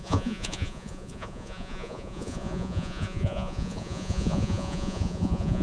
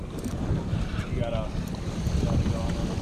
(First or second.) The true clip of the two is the second